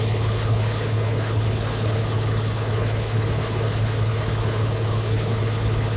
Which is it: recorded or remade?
remade